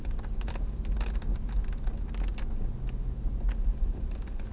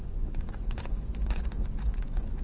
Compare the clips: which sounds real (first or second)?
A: first